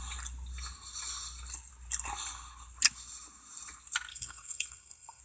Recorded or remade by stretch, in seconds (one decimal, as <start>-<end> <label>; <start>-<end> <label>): 0.0-4.1 recorded; 4.1-5.2 remade